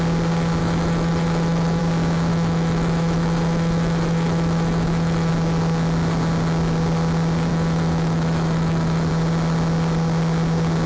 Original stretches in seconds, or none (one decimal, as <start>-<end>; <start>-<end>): 0.0-0.6; 1.8-2.3; 5.3-7.5; 9.1-10.9